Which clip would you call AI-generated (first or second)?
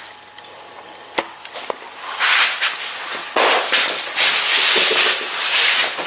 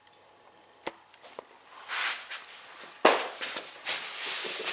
second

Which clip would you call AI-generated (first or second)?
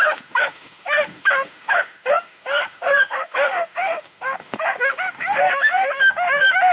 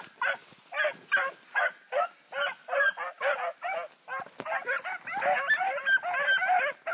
first